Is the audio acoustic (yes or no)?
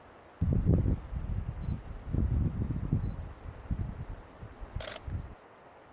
yes